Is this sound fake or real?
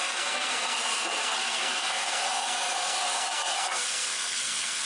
fake